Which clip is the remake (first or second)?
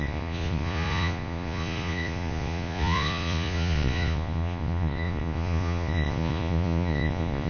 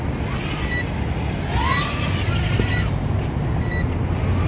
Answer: first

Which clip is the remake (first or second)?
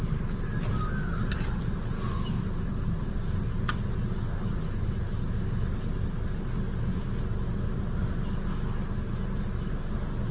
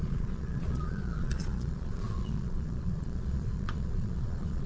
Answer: second